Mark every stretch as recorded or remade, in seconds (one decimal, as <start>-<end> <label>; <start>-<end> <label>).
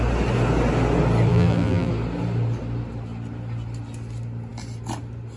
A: 0.0-1.3 recorded; 1.3-1.9 remade; 1.9-5.4 recorded